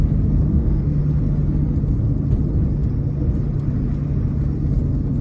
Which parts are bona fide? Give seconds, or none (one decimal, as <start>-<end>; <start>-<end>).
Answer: 0.0-0.5; 1.0-5.2

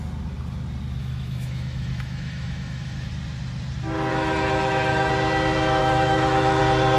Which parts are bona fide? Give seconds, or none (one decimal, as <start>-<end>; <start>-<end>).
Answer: 0.0-1.0; 3.1-4.1; 5.1-5.8; 6.6-7.0

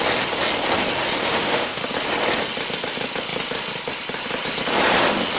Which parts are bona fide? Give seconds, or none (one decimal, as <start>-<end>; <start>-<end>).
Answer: 0.0-1.2; 1.8-5.4

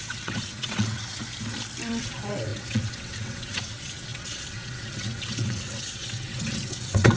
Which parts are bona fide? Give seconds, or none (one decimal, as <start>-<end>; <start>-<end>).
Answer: 1.2-2.0